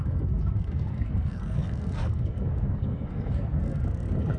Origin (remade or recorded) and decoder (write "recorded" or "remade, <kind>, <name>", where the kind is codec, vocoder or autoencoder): remade, codec, SNAC